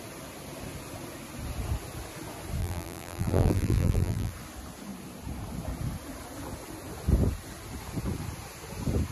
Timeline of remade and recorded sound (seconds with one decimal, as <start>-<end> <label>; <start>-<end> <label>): 0.0-2.6 recorded; 2.6-4.3 remade; 4.3-9.1 recorded